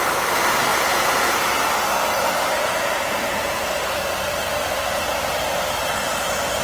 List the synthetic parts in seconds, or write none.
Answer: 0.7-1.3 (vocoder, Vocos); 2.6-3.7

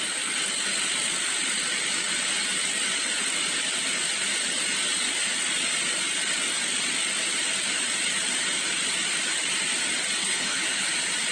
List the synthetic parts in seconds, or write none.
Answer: 10.2-10.9 (codec, HILCodec)

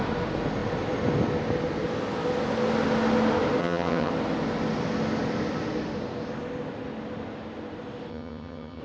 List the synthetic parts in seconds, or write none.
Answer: 3.6-4.1 (vocoder, HiFi-GAN); 8.1-8.8

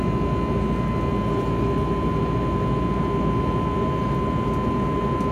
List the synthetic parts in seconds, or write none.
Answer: none

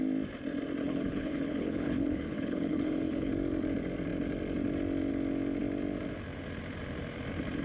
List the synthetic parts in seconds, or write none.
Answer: 0.8-3.3 (codec, HILCodec)

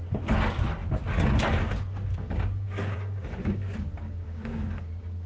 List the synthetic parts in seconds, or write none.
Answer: 2.1-5.3 (codec, DAC)

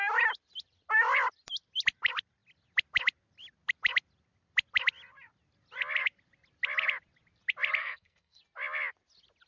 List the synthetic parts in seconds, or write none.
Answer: 7.8-8.4 (codec, SNAC)

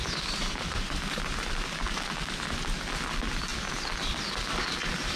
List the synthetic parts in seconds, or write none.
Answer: none